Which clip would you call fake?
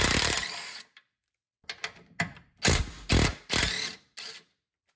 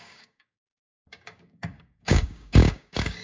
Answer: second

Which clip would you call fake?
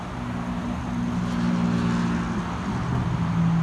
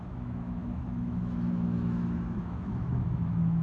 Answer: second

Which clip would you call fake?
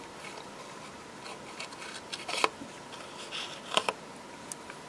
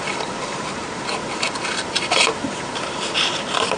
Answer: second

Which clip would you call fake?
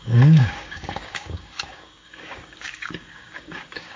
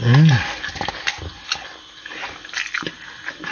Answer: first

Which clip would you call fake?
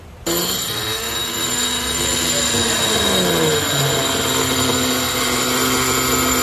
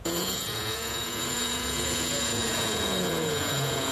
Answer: second